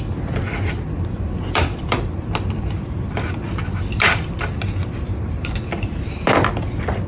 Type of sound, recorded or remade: remade